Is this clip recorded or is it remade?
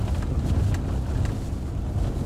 recorded